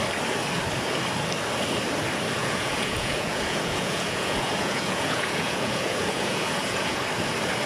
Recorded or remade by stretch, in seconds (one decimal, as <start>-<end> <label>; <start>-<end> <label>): 0.0-2.4 recorded; 2.4-7.0 remade; 7.0-7.7 recorded